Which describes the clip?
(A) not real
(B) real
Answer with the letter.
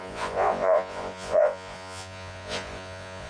A